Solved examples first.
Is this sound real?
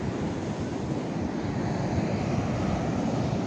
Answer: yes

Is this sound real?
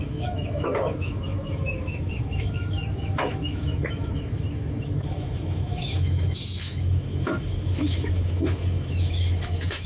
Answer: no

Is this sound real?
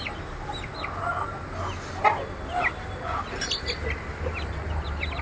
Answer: yes